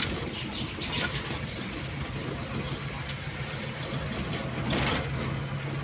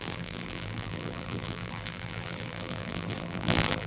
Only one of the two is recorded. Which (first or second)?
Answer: first